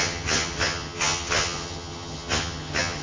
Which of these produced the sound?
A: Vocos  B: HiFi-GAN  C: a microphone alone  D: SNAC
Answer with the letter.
B